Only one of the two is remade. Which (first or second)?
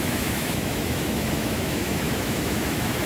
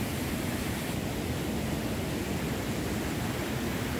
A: first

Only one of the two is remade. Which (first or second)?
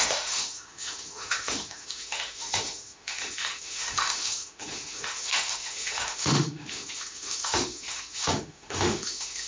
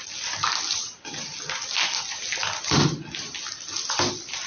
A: first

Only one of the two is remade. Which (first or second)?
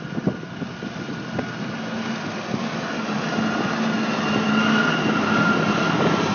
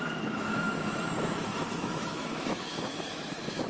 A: second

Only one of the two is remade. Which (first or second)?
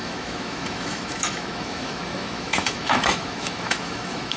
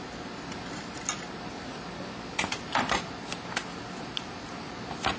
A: first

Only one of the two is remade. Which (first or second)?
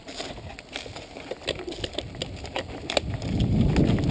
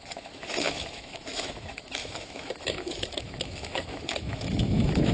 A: second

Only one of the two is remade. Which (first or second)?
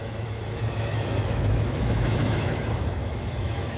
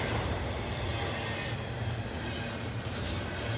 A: first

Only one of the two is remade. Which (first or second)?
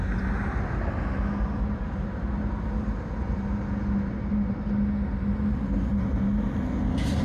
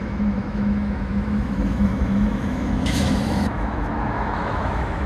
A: second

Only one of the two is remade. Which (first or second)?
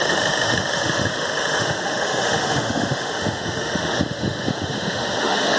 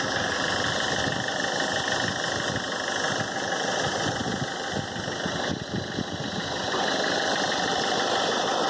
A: first